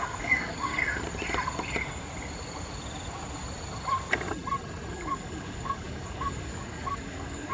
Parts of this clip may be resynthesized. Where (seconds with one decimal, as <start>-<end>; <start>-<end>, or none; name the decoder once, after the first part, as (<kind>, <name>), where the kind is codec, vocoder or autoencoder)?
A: 0.0-0.7 (codec, DAC); 4.9-7.5